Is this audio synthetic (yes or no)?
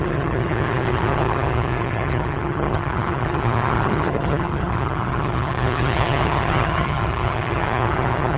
yes